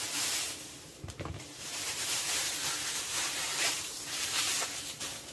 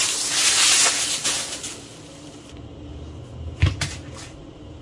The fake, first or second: first